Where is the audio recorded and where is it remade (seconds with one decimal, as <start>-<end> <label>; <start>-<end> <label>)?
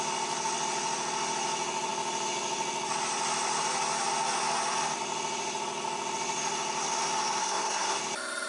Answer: 0.0-7.4 recorded; 7.4-8.0 remade; 8.0-8.5 recorded